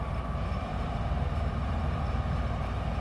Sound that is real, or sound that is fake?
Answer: fake